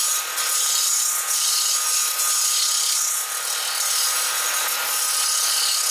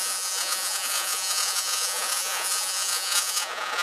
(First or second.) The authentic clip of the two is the first